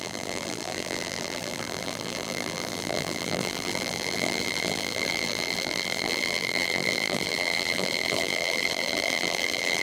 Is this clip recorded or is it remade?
remade